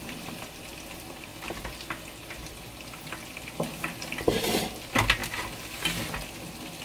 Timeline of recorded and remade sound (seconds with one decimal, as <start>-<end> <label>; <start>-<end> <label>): 0.0-6.8 recorded